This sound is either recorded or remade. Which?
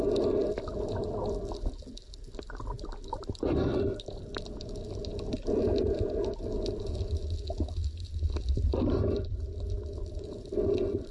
recorded